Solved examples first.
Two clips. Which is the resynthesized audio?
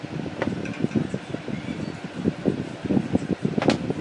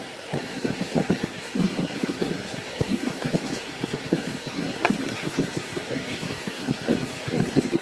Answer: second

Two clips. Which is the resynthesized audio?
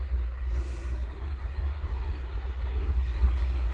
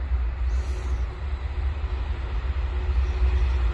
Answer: first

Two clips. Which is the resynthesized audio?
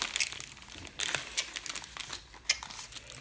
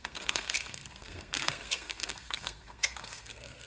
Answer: second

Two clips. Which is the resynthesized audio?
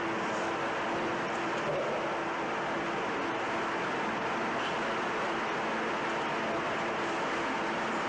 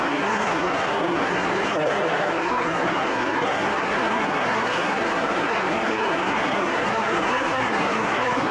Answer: second